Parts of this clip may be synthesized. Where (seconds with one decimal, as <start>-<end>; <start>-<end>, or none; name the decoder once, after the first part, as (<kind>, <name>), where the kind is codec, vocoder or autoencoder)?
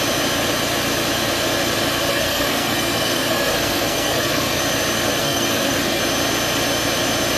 2.1-4.6 (codec, SNAC); 5.2-6.0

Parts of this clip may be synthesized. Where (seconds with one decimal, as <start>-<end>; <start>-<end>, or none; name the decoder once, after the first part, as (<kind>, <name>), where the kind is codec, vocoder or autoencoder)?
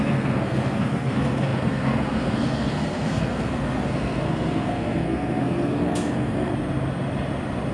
0.0-6.5 (codec, SNAC)